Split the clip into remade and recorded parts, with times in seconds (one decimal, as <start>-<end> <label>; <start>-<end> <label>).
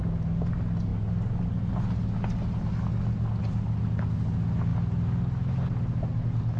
0.0-6.6 recorded